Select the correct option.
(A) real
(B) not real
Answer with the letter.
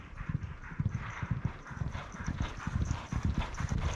B